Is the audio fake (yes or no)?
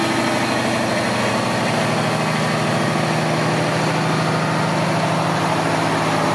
no